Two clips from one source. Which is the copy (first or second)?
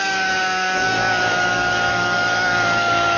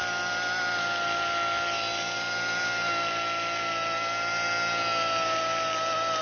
first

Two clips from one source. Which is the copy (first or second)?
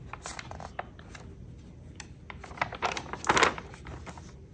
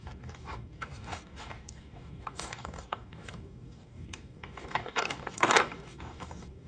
second